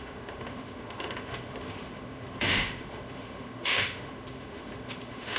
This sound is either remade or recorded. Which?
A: remade